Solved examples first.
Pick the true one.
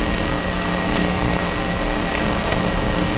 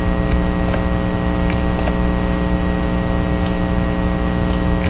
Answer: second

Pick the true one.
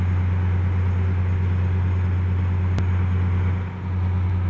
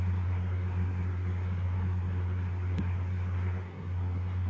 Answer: first